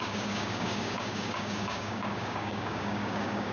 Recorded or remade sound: remade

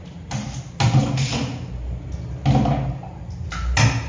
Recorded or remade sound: recorded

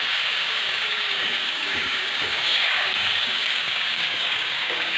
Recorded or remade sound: remade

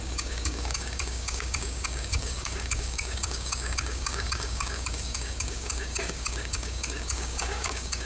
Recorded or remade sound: remade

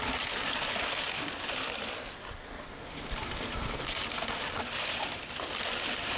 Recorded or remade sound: recorded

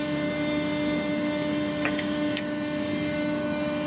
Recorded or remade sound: remade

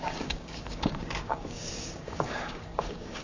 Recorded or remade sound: remade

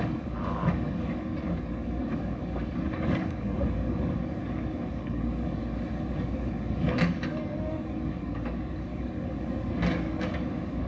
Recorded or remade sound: remade